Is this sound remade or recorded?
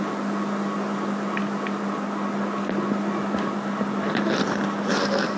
recorded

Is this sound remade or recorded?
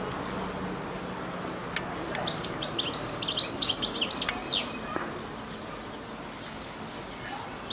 recorded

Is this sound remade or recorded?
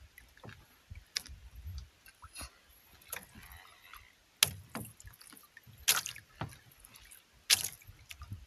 recorded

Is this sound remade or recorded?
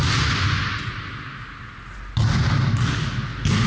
recorded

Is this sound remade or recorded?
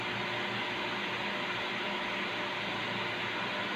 recorded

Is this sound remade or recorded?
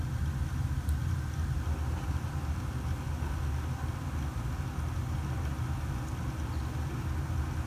recorded